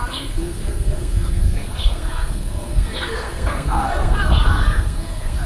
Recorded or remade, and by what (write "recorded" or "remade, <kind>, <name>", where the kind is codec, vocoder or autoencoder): remade, codec, SNAC